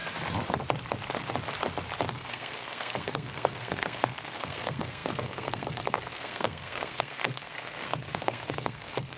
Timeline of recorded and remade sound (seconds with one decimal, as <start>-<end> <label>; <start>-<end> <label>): 0.0-2.1 recorded; 2.1-9.2 remade